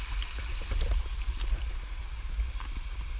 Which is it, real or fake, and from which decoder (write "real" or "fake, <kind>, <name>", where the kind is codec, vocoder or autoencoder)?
real